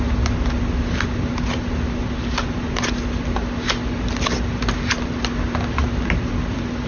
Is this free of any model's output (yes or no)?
yes